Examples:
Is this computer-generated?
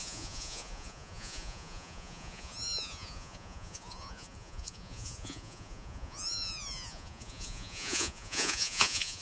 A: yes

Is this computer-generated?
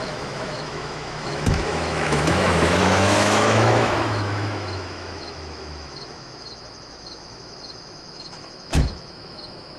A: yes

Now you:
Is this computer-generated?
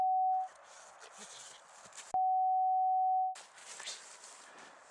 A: no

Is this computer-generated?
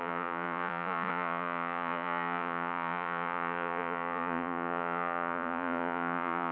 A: yes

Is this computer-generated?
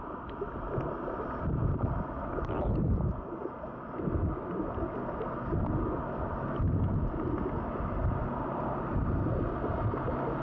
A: no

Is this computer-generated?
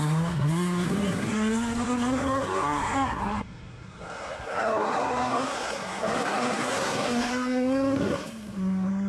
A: yes